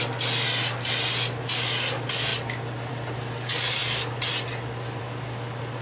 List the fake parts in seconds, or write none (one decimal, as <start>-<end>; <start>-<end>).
none